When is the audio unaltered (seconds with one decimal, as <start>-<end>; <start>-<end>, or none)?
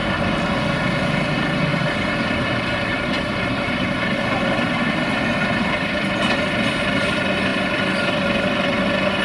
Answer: 0.0-1.7; 4.9-9.2